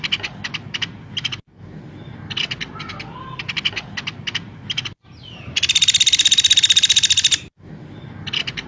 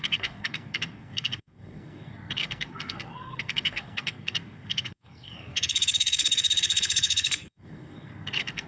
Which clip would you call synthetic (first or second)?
second